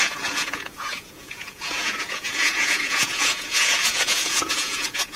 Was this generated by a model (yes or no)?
yes